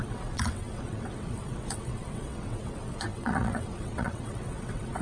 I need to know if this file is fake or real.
fake